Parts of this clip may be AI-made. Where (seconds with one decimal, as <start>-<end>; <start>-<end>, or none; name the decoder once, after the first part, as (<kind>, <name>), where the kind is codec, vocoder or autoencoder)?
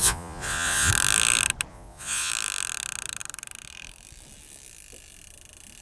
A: 0.0-0.9 (vocoder, Vocos); 1.7-2.3